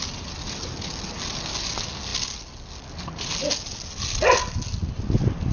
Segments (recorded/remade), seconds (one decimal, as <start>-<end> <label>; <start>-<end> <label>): 0.0-5.5 recorded